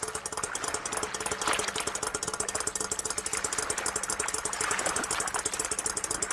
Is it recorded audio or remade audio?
recorded